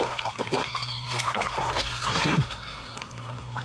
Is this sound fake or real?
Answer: fake